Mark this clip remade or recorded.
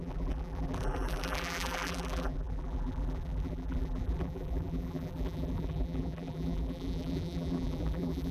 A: remade